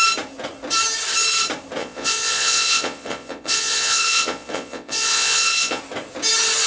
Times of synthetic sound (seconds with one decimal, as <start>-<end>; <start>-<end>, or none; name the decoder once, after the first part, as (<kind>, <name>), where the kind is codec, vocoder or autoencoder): 1.8-5.8 (vocoder, Vocos)